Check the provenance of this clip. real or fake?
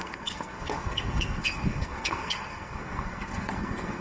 fake